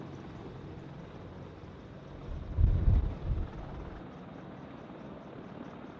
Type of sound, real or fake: real